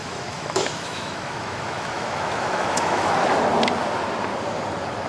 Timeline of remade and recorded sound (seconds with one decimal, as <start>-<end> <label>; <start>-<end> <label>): 0.0-3.1 remade; 3.1-5.1 recorded